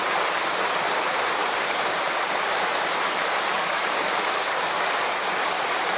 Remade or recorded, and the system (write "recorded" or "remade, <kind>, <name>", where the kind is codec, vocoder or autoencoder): remade, vocoder, BigVGAN v2